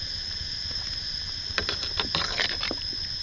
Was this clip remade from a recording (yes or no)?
no